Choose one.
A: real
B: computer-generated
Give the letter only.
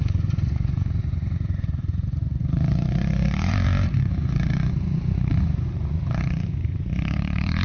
B